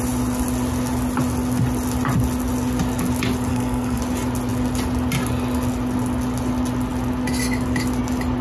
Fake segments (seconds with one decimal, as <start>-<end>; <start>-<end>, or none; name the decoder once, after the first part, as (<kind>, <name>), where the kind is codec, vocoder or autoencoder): 3.5-4.0 (codec, SNAC)